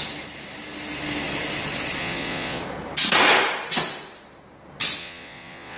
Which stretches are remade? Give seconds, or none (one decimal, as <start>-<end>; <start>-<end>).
2.0-2.6; 5.0-5.8